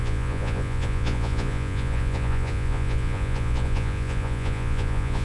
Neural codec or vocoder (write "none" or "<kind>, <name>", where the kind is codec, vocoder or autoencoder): vocoder, Vocos